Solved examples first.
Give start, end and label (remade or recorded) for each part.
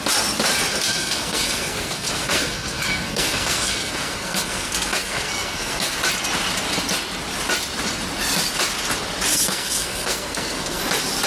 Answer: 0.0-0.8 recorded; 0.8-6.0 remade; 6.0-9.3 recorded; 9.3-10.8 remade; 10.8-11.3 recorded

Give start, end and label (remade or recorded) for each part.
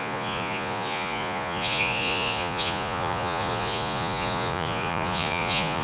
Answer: 0.0-5.8 remade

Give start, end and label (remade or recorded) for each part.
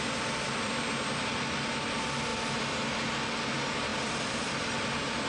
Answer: 0.0-5.3 recorded